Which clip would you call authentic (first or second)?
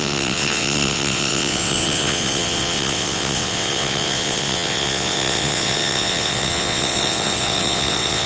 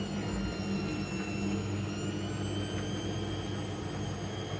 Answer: second